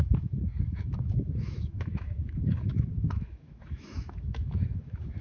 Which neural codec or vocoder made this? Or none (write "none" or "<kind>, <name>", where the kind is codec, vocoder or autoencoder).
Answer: autoencoder, DAC-VAE